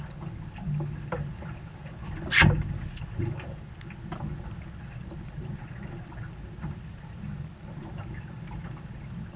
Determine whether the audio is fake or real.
real